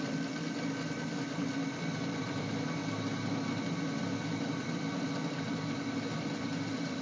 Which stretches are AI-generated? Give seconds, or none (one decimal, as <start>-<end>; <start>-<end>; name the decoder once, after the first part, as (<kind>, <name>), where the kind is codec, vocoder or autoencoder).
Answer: 0.0-2.8 (vocoder, BigVGAN v2); 4.5-7.0